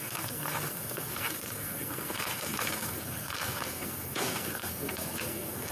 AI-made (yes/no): yes